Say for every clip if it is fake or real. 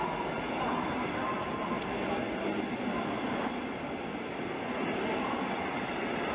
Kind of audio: real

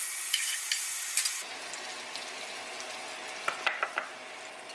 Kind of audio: real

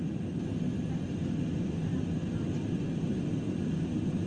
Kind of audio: real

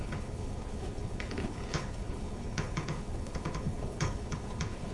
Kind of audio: fake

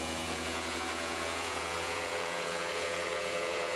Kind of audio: fake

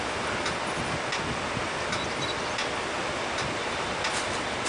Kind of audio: real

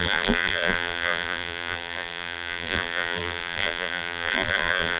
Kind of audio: fake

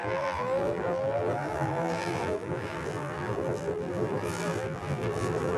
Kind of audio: fake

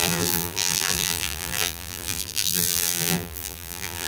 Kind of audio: fake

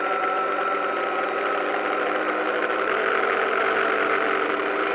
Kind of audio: real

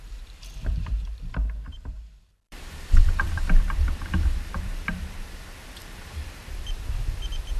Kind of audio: fake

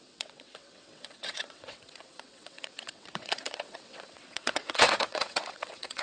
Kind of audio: fake